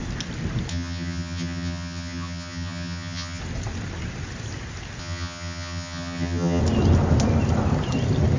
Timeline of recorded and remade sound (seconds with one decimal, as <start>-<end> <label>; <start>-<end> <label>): 0.0-0.7 recorded; 0.7-3.4 remade; 3.4-5.0 recorded; 5.0-6.6 remade; 6.6-8.4 recorded